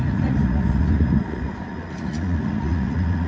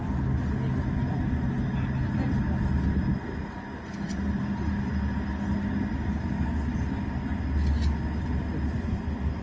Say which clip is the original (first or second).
second